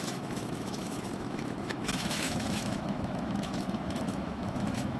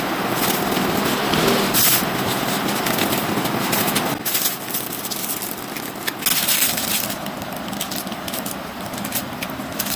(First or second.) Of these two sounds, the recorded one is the second